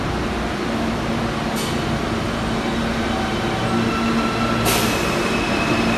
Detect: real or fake real